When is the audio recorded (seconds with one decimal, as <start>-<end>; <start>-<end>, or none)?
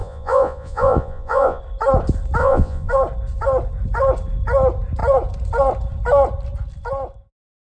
1.6-2.4; 2.9-7.7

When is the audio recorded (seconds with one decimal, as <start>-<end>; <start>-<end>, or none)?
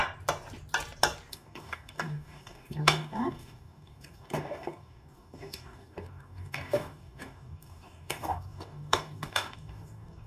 0.0-1.3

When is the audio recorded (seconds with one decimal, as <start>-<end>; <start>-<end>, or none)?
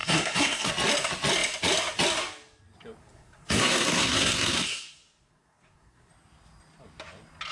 0.7-3.0; 6.1-7.5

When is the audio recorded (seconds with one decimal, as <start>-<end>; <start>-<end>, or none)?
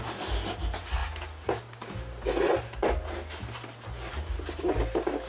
0.0-5.3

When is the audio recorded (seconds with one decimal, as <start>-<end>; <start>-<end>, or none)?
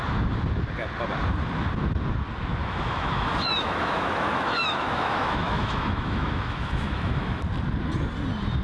0.0-2.6; 7.4-8.6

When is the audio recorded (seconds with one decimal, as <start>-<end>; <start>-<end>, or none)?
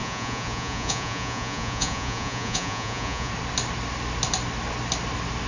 3.3-5.5